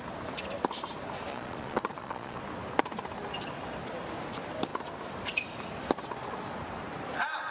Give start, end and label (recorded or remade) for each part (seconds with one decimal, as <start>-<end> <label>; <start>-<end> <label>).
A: 0.0-1.3 recorded; 1.3-2.4 remade; 2.4-7.5 recorded